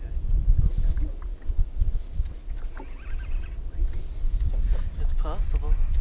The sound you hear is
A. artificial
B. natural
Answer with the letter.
B